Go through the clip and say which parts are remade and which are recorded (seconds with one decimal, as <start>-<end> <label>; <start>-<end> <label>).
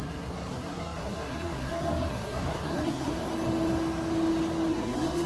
0.0-3.1 remade; 3.1-4.7 recorded; 4.7-5.3 remade